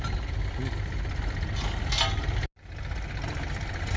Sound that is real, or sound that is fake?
real